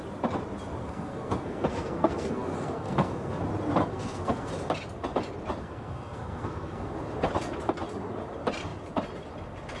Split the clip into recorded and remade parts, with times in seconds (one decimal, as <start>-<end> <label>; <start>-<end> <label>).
0.0-0.8 recorded; 0.8-3.4 remade; 3.4-3.9 recorded; 3.9-4.5 remade; 4.5-5.6 recorded; 5.6-6.9 remade; 6.9-9.8 recorded